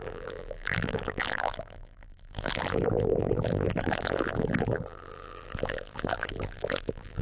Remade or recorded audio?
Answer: remade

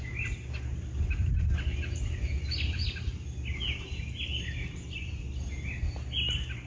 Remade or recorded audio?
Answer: recorded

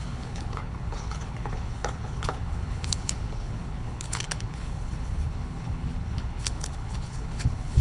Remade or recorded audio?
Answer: remade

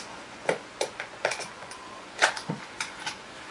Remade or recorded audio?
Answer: remade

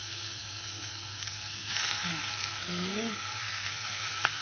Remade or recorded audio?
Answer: remade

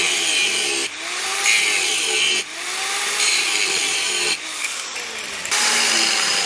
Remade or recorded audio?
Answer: recorded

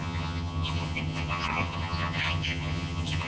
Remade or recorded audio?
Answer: remade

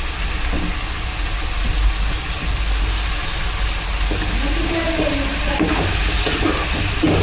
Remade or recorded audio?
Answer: recorded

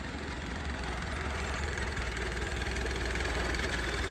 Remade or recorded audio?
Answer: remade